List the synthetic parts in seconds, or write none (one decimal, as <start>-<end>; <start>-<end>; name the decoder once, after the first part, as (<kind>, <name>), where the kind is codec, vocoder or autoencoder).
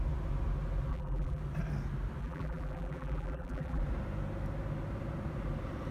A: 0.9-1.4 (vocoder, BigVGAN v2); 2.2-3.8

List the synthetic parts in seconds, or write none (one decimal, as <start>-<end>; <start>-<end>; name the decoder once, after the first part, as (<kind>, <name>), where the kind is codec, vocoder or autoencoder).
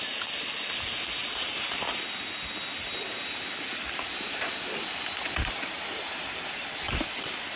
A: none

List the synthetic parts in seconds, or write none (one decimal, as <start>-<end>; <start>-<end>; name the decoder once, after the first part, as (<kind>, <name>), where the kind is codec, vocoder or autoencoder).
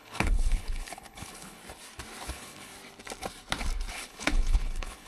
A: 0.0-1.6 (codec, HILCodec); 2.3-2.7; 3.9-5.1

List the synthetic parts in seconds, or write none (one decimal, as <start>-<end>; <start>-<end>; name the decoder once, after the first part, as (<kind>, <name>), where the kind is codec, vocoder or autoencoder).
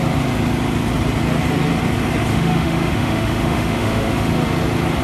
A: 2.3-4.3 (autoencoder, DAC-VAE)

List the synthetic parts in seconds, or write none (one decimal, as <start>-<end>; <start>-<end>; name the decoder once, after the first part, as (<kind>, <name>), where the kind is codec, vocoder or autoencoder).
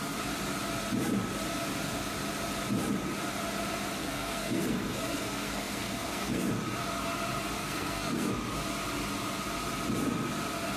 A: 4.0-6.5 (codec, SNAC); 7.6-8.3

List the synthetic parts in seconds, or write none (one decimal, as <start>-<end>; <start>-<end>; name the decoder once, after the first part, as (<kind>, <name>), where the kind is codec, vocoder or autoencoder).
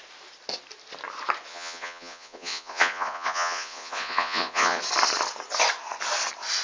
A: 1.5-4.8 (vocoder, Vocos)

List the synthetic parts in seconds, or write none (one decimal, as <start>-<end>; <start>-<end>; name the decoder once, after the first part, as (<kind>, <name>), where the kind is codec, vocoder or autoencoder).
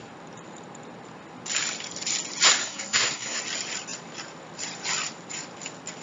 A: 2.6-3.4 (codec, SNAC)